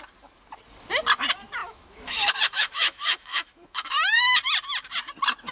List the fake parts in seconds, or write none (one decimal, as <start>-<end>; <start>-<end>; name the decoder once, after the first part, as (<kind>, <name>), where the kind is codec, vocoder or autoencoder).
1.6-4.4 (autoencoder, DAC-VAE)